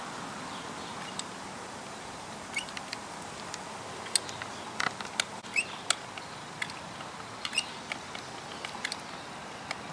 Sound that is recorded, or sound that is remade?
recorded